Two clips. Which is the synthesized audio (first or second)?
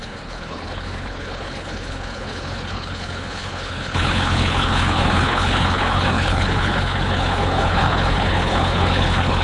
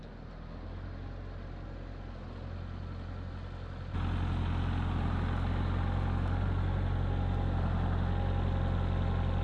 first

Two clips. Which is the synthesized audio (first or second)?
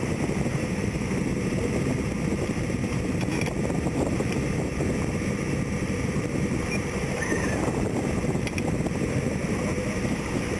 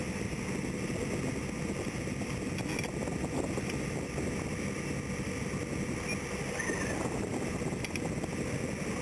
first